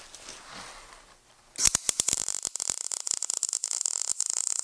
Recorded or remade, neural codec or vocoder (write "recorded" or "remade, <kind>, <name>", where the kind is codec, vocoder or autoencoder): recorded